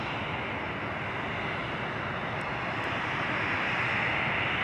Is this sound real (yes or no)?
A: yes